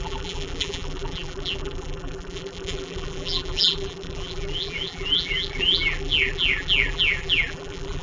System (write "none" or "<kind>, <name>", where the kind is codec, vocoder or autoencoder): vocoder, BigVGAN v2